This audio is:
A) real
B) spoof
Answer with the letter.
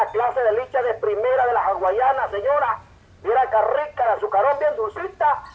A